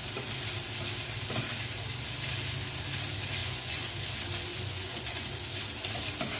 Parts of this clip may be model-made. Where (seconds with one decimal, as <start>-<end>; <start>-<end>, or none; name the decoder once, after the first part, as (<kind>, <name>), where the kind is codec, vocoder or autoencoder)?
3.4-3.9 (vocoder, Vocos); 4.5-5.3

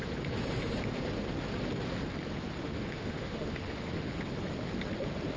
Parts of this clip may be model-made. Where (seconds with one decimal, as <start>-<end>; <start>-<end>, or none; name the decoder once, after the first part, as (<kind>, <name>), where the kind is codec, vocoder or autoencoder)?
2.6-4.1 (autoencoder, DAC-VAE)